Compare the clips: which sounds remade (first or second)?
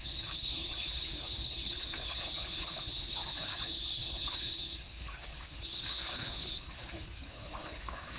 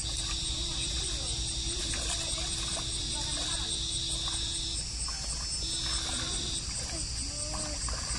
first